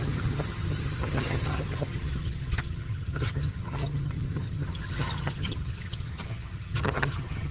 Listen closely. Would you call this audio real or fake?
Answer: fake